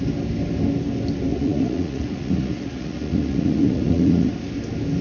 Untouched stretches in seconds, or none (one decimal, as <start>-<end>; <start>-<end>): 0.0-1.3; 4.3-5.0